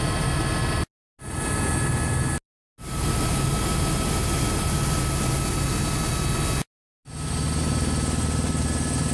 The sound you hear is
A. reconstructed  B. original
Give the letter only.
B